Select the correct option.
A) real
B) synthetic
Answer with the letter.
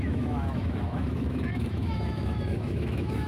B